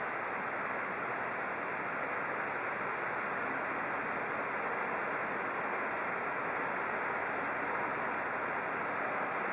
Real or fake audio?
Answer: real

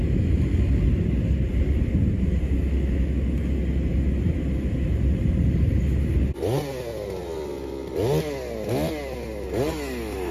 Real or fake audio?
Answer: real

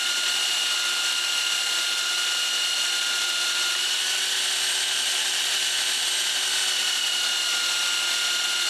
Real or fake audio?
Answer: real